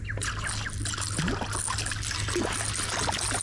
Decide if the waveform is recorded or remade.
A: recorded